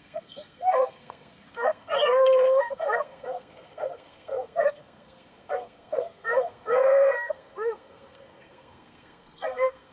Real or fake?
fake